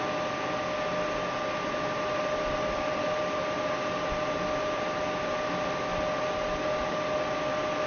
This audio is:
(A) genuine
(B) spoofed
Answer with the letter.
A